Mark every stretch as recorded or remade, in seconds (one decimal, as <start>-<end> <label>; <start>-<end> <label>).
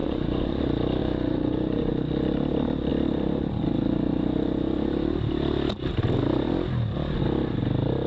0.0-0.6 remade; 0.6-1.0 recorded; 1.0-1.9 remade; 1.9-8.1 recorded